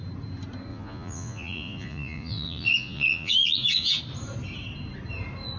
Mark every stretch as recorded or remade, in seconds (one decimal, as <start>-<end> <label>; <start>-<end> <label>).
0.0-0.7 recorded; 0.7-4.0 remade; 4.0-5.6 recorded